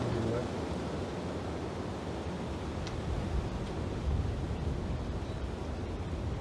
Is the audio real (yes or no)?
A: yes